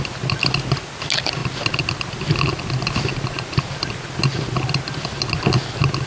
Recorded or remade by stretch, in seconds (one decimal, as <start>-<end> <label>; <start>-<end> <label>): 0.0-6.1 recorded